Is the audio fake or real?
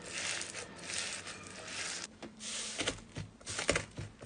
real